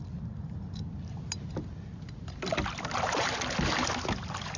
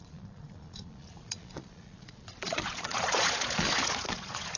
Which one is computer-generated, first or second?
second